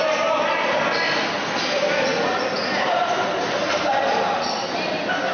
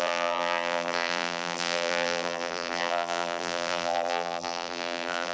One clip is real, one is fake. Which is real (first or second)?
first